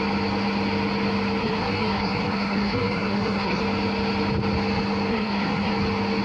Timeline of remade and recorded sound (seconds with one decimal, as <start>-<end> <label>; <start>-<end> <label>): 0.0-1.4 recorded; 1.4-3.6 remade; 3.6-5.1 recorded; 5.1-5.7 remade; 5.7-6.2 recorded